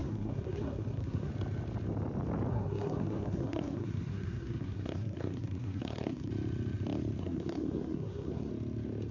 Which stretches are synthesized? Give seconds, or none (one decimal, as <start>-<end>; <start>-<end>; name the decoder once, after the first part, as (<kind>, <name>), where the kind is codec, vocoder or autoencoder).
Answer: 0.0-1.3 (codec, SNAC); 2.5-6.3; 7.2-8.5